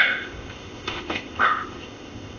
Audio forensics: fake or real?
fake